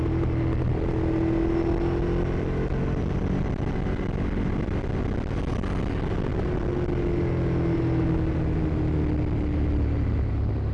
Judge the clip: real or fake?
real